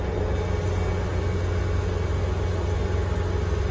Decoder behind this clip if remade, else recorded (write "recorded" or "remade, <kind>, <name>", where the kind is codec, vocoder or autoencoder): recorded